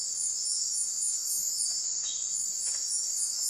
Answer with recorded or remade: remade